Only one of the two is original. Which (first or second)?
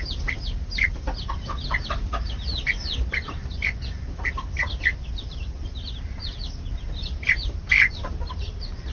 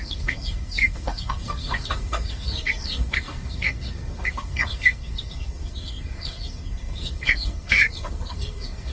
first